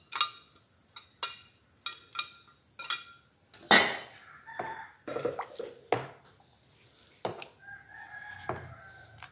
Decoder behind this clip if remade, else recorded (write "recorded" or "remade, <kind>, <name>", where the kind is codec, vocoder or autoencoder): recorded